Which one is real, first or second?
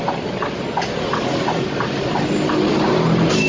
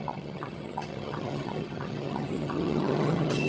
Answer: first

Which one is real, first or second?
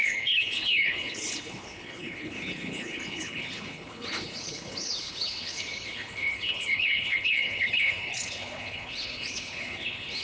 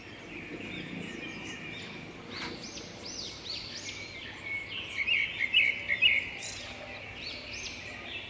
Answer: second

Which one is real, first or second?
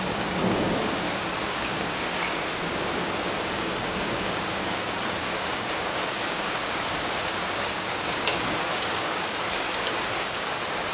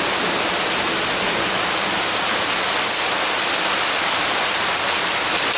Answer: second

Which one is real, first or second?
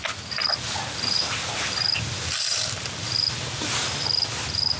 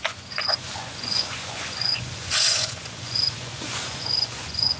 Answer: first